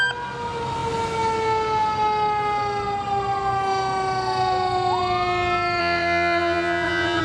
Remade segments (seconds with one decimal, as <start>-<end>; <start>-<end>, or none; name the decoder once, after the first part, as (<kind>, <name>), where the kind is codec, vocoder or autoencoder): 5.8-7.2 (vocoder, WaveNeXt)